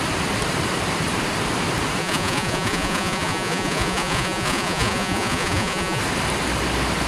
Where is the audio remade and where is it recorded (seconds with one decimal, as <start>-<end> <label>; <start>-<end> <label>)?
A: 0.0-2.0 recorded; 2.0-6.0 remade; 6.0-7.1 recorded